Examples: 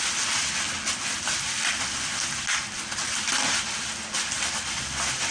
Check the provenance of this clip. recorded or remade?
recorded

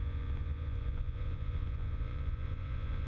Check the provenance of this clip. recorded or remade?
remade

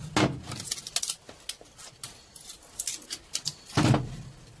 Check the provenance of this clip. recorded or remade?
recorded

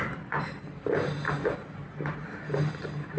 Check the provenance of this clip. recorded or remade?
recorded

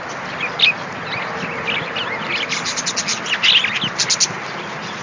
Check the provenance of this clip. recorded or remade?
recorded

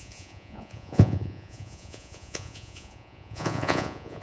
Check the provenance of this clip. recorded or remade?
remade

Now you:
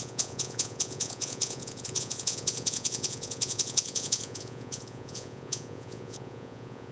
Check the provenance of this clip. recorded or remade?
remade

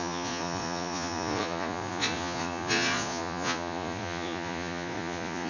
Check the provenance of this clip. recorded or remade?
remade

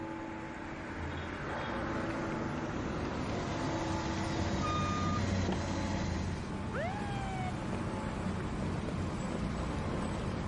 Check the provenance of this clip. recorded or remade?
recorded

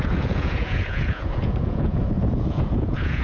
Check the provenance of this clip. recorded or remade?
remade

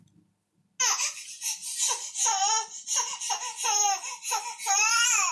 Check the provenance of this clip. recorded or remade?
recorded